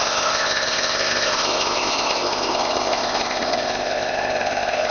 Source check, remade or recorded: remade